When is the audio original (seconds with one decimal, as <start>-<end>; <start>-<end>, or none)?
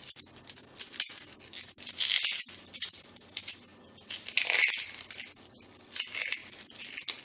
0.0-7.2